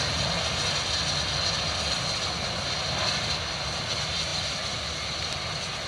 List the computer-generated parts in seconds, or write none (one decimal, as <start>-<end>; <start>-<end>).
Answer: none